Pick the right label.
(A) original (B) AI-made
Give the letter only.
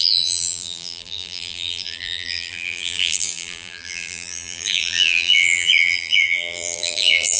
B